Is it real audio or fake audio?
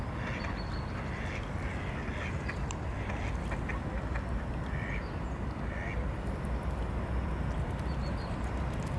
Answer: real